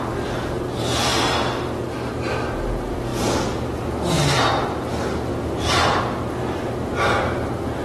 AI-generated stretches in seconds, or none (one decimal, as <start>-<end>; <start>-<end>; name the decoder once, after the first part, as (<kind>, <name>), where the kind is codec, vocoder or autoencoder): 5.3-6.0 (vocoder, BigVGAN v2)